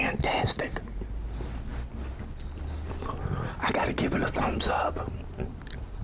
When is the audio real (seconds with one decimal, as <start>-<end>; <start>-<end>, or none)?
0.0-6.0